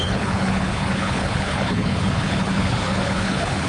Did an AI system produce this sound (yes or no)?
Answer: yes